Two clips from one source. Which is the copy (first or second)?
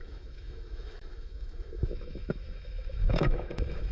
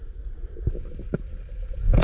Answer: first